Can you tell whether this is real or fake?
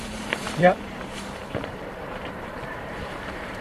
fake